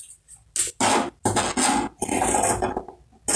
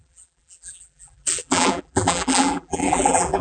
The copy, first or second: second